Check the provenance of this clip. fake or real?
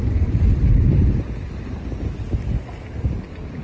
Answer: real